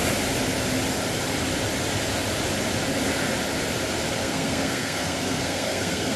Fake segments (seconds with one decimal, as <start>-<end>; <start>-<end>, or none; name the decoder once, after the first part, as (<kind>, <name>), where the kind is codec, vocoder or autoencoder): 4.2-6.2 (codec, SNAC)